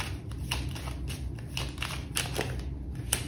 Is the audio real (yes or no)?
yes